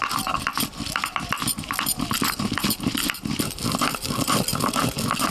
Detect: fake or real real